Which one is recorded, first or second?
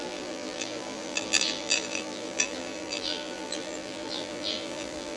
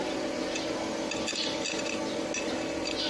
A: second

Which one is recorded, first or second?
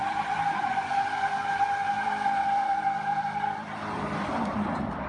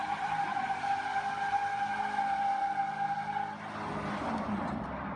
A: second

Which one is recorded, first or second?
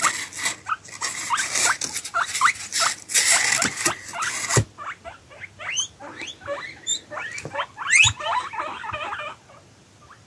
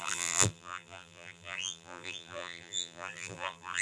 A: first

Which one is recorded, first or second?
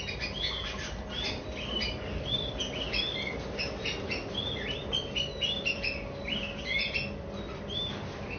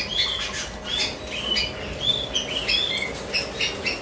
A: second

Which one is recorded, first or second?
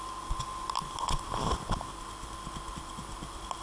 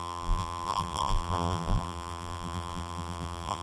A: first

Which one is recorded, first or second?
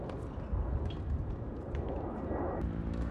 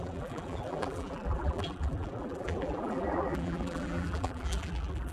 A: first